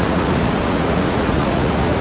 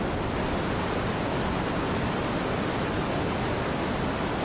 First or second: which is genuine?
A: second